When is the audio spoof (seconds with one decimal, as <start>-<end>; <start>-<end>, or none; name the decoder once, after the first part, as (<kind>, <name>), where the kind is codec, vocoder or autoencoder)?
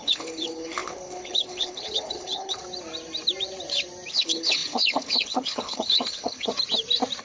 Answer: 0.0-2.6 (codec, HILCodec); 4.1-6.5